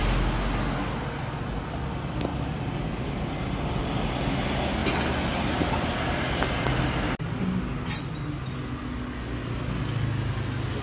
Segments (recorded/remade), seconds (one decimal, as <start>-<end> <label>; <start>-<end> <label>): 0.0-10.8 recorded